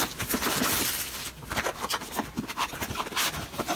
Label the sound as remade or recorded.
remade